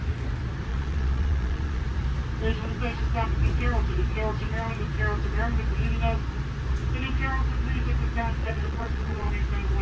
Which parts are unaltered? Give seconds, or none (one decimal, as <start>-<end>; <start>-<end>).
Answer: 0.0-0.7; 1.8-8.4; 9.3-9.8